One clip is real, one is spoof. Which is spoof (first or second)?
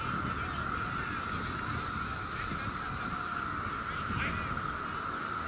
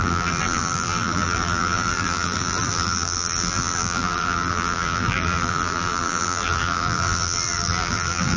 second